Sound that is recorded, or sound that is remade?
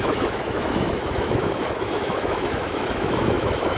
remade